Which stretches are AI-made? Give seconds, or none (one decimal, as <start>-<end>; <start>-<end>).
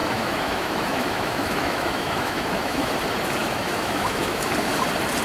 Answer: 0.0-2.9; 3.4-4.5